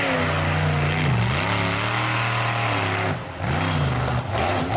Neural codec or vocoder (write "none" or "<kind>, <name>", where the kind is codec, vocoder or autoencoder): none